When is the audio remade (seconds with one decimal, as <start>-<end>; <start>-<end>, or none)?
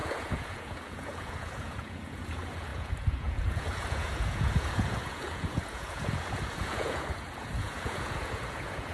0.0-8.9